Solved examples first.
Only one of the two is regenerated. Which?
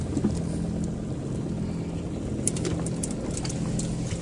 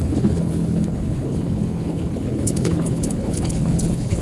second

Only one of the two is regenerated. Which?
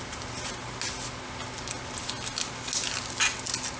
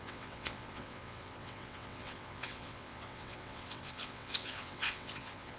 second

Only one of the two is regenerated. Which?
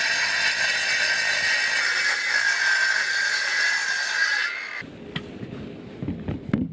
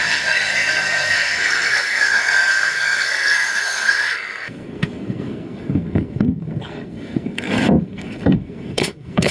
second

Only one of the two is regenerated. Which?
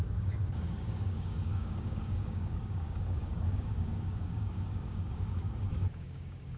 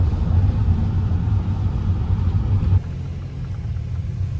first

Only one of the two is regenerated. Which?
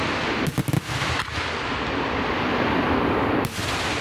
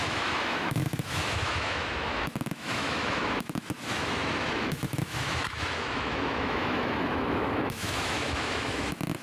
second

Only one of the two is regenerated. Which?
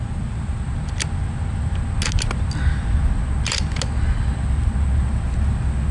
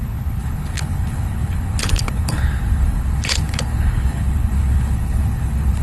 second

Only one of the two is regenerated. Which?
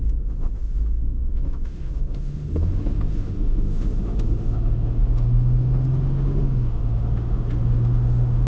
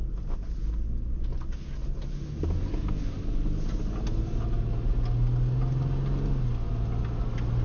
first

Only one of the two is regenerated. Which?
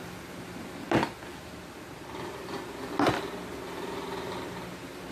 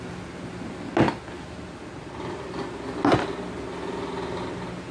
first